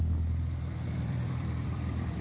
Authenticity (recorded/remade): remade